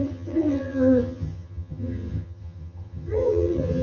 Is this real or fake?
fake